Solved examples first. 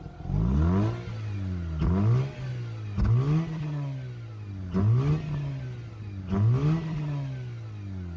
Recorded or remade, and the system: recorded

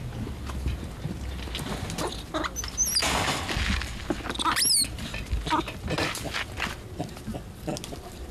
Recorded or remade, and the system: recorded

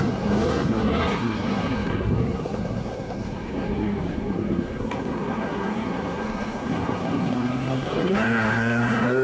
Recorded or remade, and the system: remade, codec, SNAC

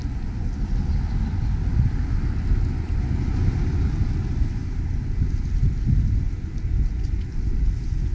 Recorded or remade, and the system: recorded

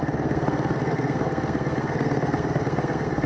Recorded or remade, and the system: remade, codec, SNAC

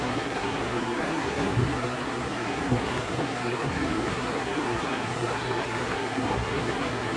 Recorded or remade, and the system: remade, codec, SNAC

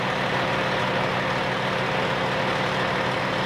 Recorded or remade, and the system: recorded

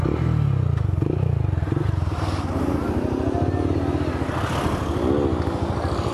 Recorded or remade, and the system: recorded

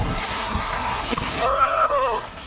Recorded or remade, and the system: remade, codec, SNAC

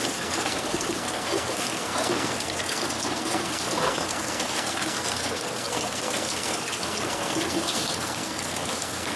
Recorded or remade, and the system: remade, codec, SNAC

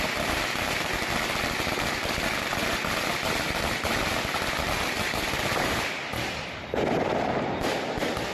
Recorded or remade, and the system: recorded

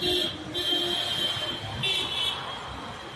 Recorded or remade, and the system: recorded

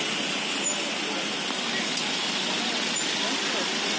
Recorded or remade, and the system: recorded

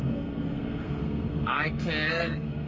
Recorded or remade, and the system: remade, codec, SNAC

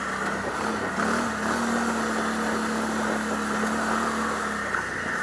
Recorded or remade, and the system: recorded